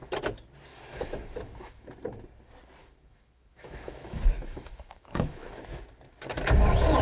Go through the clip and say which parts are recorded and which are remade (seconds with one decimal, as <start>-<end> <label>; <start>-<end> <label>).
0.0-0.7 recorded; 0.7-1.9 remade; 1.9-2.8 recorded; 2.8-5.6 remade; 5.6-7.0 recorded